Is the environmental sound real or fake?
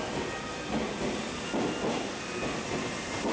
real